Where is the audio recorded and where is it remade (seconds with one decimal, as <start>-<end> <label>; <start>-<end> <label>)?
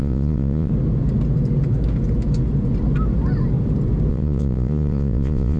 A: 0.0-0.7 remade; 0.7-4.1 recorded; 4.1-5.6 remade